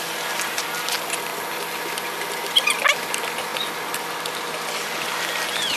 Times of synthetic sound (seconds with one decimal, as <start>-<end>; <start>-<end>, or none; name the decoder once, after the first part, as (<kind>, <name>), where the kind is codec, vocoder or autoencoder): none